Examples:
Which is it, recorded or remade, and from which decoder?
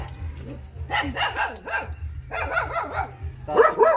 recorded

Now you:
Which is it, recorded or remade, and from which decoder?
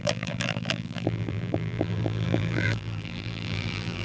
remade, vocoder, BigVGAN v2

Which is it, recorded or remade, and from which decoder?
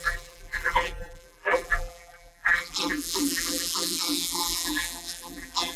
remade, vocoder, BigVGAN v2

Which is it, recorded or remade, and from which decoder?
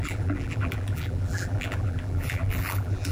remade, vocoder, BigVGAN v2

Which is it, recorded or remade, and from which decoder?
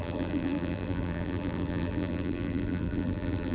remade, vocoder, BigVGAN v2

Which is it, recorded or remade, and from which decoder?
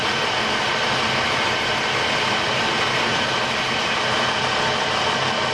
remade, vocoder, BigVGAN v2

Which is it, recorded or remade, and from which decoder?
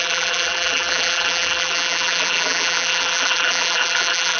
remade, vocoder, BigVGAN v2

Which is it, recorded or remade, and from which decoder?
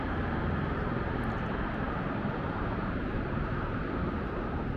remade, vocoder, BigVGAN v2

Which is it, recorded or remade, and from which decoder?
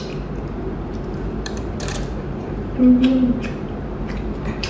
remade, vocoder, BigVGAN v2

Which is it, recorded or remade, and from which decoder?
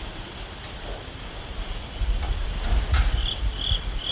remade, vocoder, BigVGAN v2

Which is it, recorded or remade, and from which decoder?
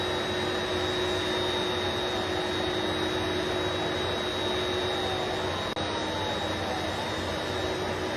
recorded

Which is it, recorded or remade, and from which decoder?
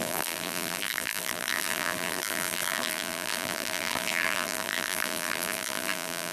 remade, vocoder, BigVGAN v2